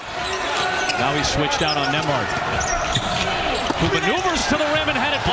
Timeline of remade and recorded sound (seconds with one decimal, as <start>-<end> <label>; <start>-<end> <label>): 0.0-5.3 recorded